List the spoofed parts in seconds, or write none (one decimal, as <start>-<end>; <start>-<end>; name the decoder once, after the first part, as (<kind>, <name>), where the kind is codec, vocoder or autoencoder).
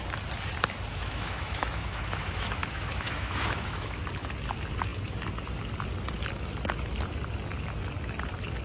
0.9-4.0 (autoencoder, DAC-VAE)